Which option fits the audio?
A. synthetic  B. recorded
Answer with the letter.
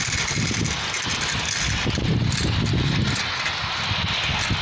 B